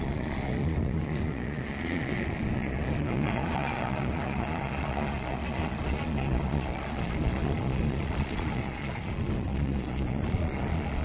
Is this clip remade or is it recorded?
remade